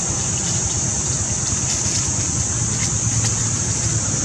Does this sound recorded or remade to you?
remade